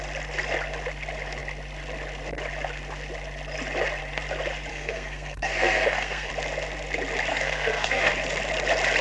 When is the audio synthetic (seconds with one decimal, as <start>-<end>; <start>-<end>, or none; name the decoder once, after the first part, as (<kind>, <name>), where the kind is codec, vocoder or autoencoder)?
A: 4.7-6.3 (codec, SNAC); 7.3-8.1